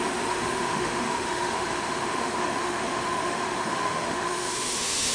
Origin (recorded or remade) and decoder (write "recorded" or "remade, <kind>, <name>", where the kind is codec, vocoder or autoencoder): remade, autoencoder, DAC-VAE